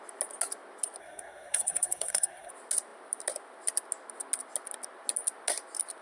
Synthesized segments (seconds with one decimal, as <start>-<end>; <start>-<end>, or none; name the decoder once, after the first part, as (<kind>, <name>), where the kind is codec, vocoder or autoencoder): 1.0-2.5 (codec, SNAC)